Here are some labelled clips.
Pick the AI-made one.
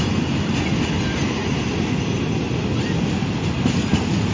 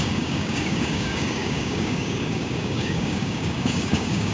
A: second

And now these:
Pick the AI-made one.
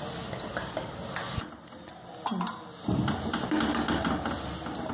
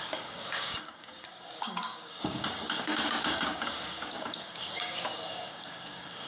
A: second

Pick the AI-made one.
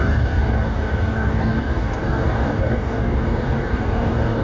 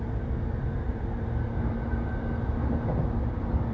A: first